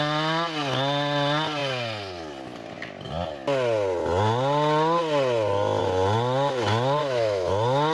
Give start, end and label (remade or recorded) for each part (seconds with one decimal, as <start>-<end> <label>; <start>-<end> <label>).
0.0-7.0 recorded; 7.0-7.5 remade; 7.5-7.9 recorded